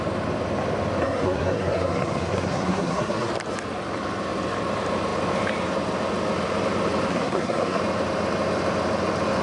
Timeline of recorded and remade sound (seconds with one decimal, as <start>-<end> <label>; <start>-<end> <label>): 0.0-1.0 recorded; 1.0-3.3 remade; 3.3-7.1 recorded; 7.1-7.8 remade; 7.8-9.4 recorded